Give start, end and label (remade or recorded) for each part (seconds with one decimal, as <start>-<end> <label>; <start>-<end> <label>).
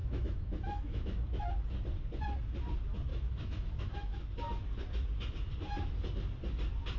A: 0.0-1.5 remade; 1.5-3.1 recorded; 3.1-4.2 remade; 4.2-7.0 recorded